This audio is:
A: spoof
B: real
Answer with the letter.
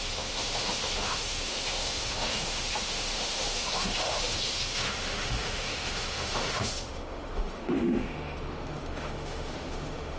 A